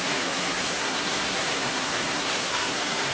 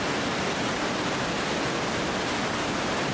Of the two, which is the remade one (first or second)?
first